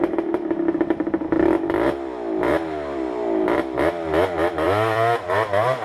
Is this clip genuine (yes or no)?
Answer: no